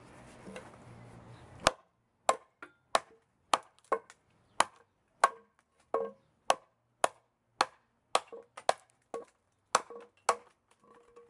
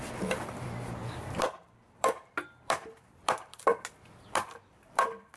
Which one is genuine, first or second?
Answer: first